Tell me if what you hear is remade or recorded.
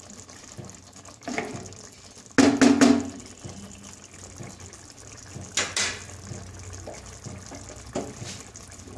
recorded